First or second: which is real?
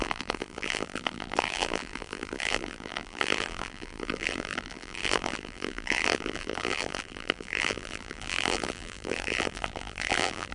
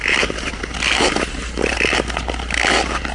second